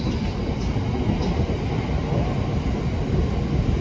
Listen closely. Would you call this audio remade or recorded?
recorded